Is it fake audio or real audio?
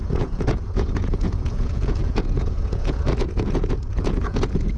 fake